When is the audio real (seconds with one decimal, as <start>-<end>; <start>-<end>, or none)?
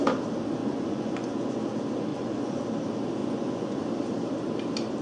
0.0-0.6; 1.6-2.1; 2.6-3.2; 3.8-5.0